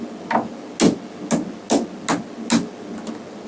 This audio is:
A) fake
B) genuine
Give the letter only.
B